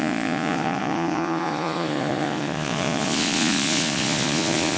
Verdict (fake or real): fake